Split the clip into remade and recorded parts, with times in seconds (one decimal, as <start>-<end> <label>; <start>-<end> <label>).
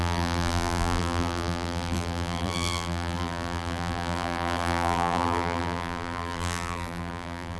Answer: 0.0-7.6 remade